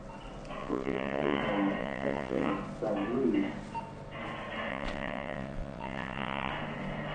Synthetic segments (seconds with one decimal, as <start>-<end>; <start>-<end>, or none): 0.6-1.4; 1.8-2.5; 4.7-6.5